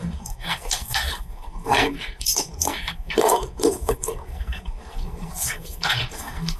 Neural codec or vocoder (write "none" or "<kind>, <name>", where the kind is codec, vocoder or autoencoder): codec, SNAC